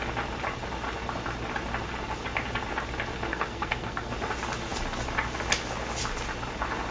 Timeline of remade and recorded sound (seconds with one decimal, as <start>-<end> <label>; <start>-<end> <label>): 0.0-3.3 recorded; 3.3-4.1 remade; 4.1-6.9 recorded